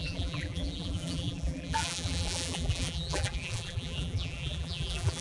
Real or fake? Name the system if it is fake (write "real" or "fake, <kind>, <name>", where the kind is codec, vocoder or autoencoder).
fake, vocoder, BigVGAN v2